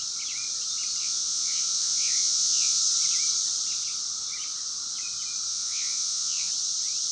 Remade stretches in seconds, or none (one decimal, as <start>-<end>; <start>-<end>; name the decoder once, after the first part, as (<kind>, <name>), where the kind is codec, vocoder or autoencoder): 1.0-2.8 (vocoder, Vocos); 5.5-6.5